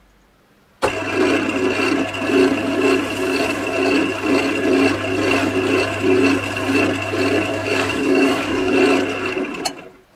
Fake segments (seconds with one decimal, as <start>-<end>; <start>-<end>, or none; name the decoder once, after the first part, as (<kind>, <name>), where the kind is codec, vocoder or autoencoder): 7.5-8.7 (codec, DAC)